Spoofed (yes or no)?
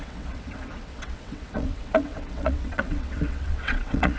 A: yes